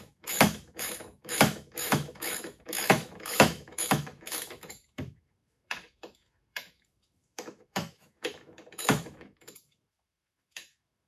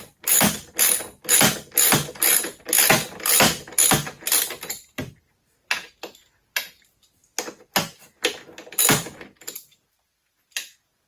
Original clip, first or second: second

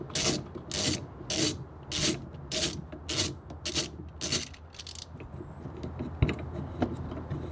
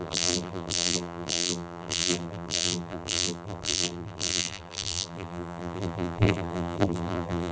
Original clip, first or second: first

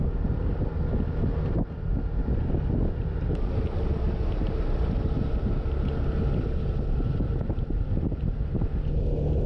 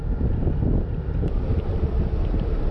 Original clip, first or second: first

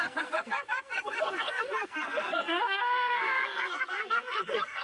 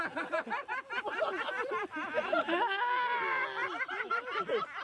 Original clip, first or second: second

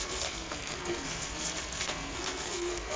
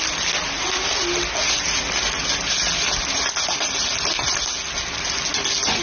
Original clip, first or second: second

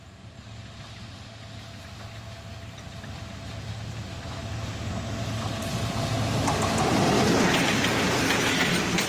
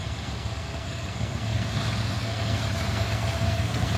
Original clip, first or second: first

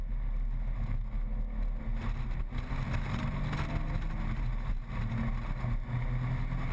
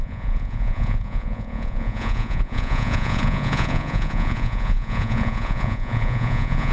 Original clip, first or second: first